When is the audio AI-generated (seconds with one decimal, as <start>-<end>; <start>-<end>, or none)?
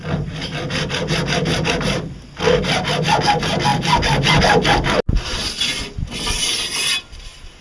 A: none